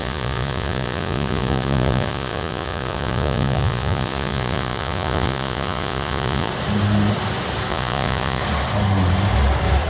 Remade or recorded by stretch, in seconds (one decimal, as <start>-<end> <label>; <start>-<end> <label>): 0.0-6.5 remade; 6.5-7.7 recorded; 7.7-8.4 remade; 8.4-9.9 recorded